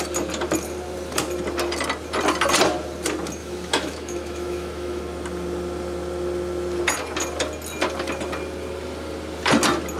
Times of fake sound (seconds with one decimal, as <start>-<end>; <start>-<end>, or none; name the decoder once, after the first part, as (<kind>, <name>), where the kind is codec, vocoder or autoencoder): 3.4-5.0 (autoencoder, DAC-VAE)